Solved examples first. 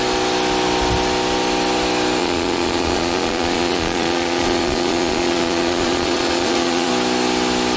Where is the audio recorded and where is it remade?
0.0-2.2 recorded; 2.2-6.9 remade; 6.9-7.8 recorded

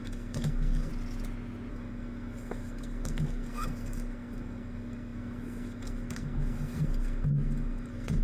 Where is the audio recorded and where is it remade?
0.0-0.9 remade; 0.9-1.7 recorded; 1.7-8.2 remade